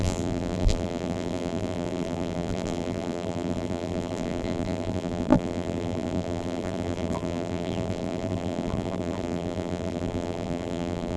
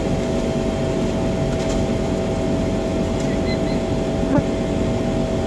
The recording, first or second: second